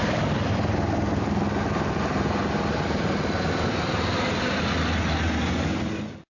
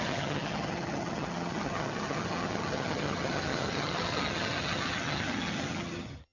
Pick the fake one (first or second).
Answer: second